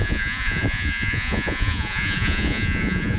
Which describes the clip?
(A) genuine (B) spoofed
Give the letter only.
B